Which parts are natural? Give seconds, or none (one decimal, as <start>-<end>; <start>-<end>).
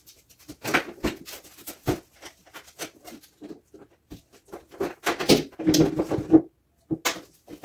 0.0-7.6